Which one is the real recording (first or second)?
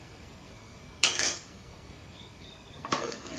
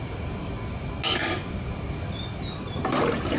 second